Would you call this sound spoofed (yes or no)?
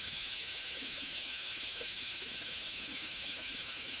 yes